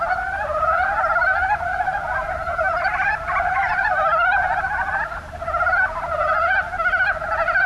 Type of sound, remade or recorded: recorded